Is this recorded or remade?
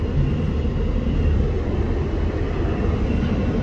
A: recorded